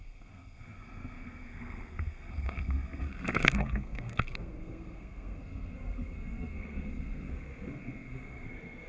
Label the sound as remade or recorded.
remade